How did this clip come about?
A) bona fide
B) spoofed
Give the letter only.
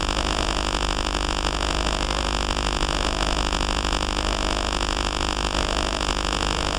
B